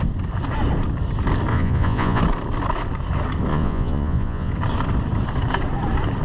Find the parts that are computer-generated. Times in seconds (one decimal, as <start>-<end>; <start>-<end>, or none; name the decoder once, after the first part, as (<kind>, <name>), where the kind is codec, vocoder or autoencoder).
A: 1.5-2.2 (vocoder, Vocos); 3.5-4.5